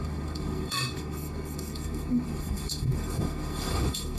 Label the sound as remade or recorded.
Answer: remade